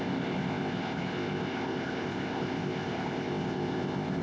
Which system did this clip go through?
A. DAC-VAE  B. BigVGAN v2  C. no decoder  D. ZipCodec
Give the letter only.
D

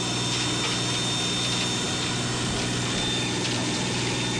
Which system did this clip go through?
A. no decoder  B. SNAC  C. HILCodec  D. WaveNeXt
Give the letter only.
A